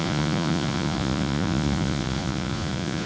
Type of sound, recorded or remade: remade